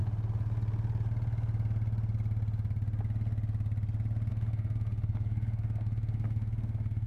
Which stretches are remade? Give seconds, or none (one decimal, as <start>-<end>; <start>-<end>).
4.3-7.1